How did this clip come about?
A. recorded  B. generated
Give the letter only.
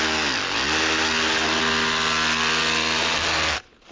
A